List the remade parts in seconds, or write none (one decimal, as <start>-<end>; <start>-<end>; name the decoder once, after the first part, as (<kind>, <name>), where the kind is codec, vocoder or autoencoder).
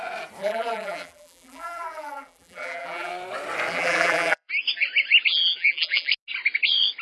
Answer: 0.4-3.1 (vocoder, BigVGAN v2); 3.7-4.5; 5.3-6.1